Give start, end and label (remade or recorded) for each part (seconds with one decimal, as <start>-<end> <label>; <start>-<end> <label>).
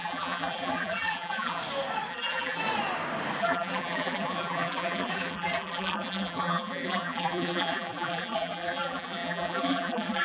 0.0-1.6 remade; 1.6-2.1 recorded; 2.1-2.6 remade; 2.6-3.4 recorded; 3.4-10.2 remade